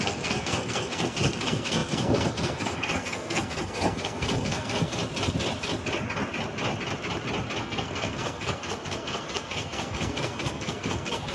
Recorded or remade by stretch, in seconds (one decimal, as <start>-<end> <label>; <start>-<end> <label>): 0.0-5.0 remade; 5.0-7.6 recorded; 7.6-11.3 remade

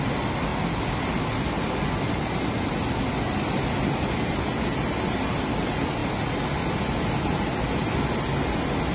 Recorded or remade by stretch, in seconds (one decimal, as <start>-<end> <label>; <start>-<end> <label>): 0.0-8.9 recorded

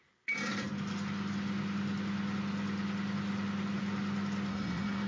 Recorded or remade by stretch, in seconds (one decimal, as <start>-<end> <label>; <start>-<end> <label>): 0.0-4.5 recorded; 4.5-5.1 remade

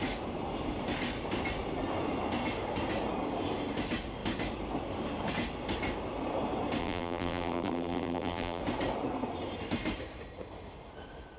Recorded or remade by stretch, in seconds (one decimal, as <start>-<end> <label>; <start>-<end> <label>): 0.0-6.8 recorded; 6.8-8.6 remade; 8.6-11.4 recorded

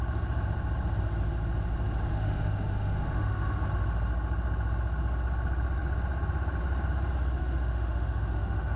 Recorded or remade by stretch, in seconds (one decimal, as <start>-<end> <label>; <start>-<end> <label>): 0.0-2.1 recorded; 2.1-3.7 remade; 3.7-7.4 recorded; 7.4-8.8 remade

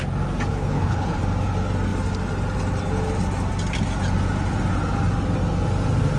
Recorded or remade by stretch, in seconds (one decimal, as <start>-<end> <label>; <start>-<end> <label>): 0.0-0.5 recorded; 0.5-1.2 remade; 1.2-6.2 recorded

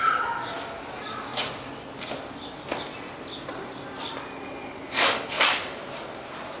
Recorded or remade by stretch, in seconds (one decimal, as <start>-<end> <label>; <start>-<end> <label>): 0.0-6.6 recorded